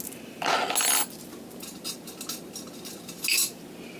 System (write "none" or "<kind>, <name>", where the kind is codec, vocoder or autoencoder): none